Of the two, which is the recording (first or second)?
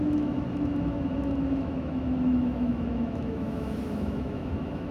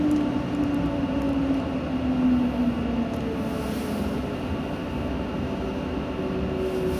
second